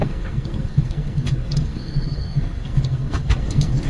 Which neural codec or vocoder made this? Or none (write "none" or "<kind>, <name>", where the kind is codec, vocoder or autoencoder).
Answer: codec, SNAC